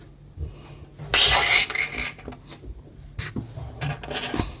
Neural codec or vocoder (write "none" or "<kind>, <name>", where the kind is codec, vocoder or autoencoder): none